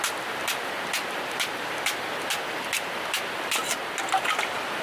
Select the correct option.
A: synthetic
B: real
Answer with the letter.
B